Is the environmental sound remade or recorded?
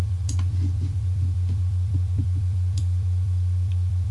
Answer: remade